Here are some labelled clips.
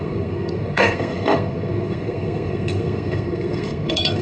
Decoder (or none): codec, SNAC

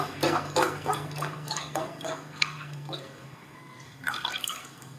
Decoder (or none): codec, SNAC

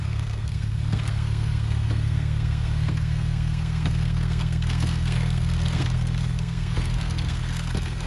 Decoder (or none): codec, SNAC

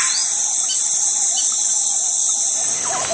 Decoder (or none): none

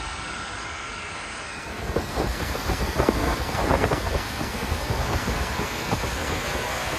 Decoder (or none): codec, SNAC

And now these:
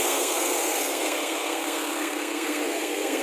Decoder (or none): codec, SNAC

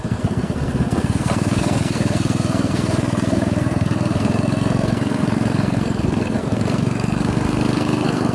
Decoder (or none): codec, SNAC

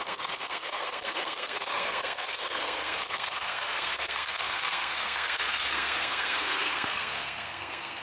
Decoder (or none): codec, SNAC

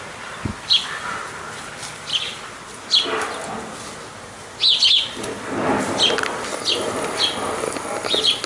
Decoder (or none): none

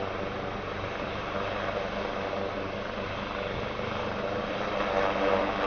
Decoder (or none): none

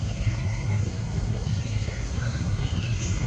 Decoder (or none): codec, SNAC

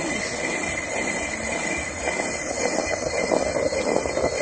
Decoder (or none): none